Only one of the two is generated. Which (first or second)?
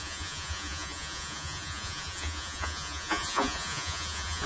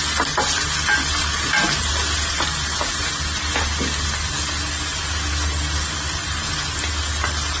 first